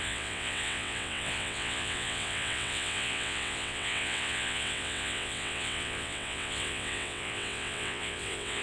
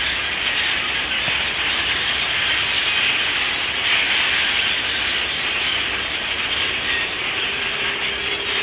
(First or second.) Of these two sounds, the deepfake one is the first